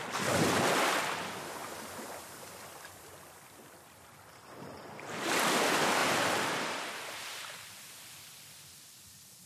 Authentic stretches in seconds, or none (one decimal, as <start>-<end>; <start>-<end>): 0.0-6.0; 7.8-9.5